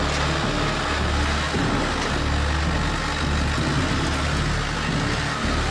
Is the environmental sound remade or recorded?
recorded